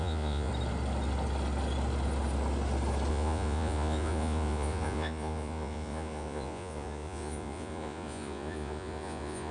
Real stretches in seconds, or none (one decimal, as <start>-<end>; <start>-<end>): 0.5-3.1